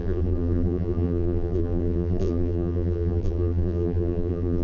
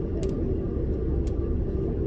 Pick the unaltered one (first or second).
second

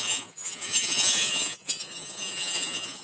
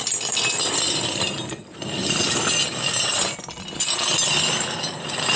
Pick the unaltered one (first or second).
second